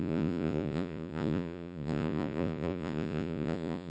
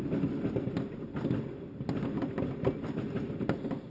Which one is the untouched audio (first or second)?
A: second